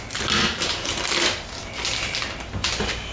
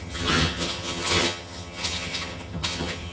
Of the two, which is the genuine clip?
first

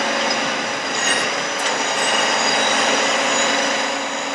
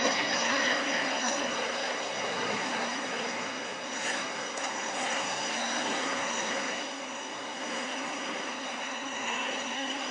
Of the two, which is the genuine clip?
first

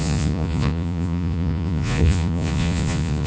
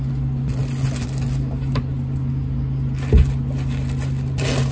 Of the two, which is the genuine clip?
second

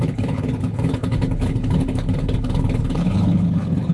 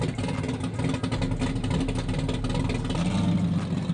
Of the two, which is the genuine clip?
second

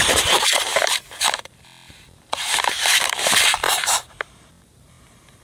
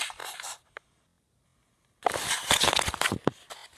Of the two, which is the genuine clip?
second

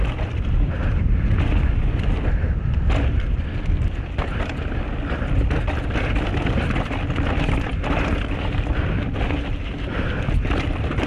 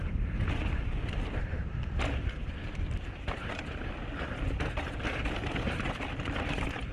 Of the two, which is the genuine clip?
first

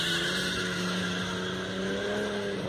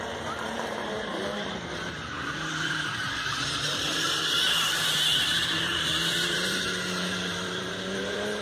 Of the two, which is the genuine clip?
first